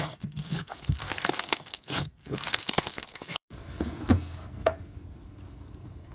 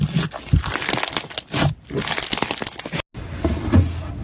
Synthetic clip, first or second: first